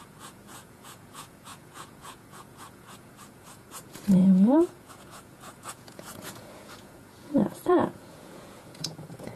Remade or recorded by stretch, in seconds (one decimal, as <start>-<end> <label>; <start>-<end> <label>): 0.0-9.4 remade